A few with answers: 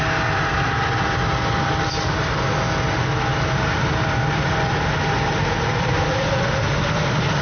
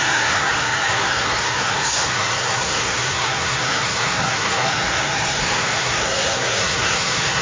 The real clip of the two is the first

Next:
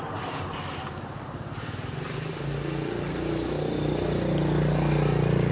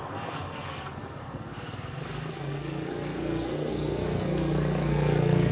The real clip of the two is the first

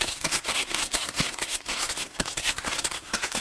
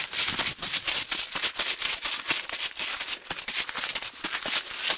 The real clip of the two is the second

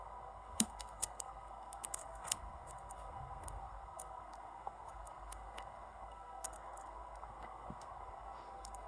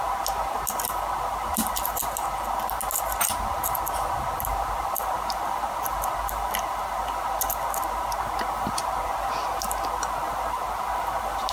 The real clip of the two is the second